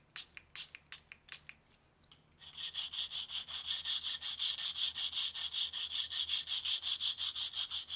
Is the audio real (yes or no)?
yes